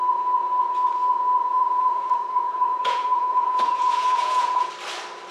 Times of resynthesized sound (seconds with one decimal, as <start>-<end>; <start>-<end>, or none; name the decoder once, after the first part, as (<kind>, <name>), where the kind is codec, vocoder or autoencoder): 1.5-4.7 (vocoder, Vocos)